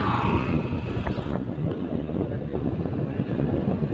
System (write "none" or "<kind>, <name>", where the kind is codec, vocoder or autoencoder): vocoder, Vocos